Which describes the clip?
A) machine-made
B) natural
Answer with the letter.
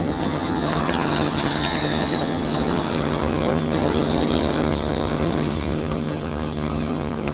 A